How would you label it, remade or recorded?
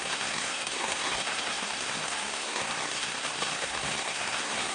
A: remade